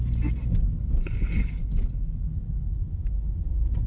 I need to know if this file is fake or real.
real